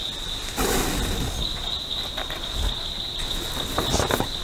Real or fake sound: real